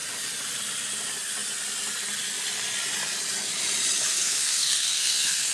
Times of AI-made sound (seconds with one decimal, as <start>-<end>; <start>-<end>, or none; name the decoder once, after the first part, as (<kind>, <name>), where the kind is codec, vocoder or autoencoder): 4.1-5.5 (codec, SNAC)